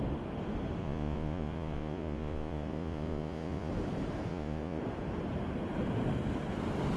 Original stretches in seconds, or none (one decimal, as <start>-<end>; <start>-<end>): 0.0-0.8; 3.7-4.3; 4.8-7.0